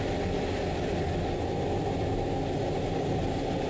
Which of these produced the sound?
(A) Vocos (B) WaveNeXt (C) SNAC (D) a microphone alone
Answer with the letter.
D